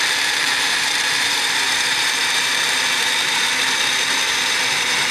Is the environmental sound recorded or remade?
remade